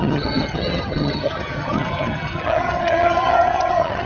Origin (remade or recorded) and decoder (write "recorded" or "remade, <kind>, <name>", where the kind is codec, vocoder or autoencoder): remade, vocoder, HiFi-GAN